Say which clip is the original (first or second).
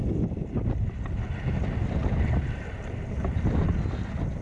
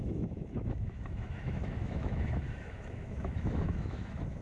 first